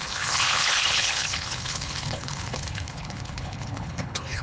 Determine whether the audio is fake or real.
fake